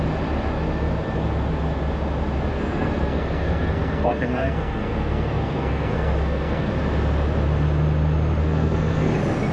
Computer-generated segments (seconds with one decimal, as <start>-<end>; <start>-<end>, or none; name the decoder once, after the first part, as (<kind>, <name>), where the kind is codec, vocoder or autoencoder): 2.5-6.7 (codec, SNAC); 8.4-9.1